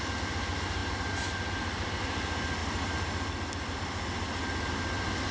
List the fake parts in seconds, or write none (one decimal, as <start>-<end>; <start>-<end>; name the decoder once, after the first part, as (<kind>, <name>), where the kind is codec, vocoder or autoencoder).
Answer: none